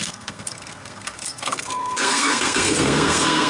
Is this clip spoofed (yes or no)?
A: yes